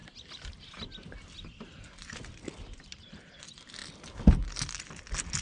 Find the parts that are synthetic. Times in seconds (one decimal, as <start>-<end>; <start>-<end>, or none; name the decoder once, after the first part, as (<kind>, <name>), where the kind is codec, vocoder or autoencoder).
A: none